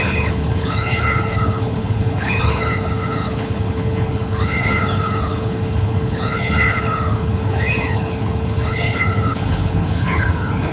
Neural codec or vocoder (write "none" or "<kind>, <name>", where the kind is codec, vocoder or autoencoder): codec, HILCodec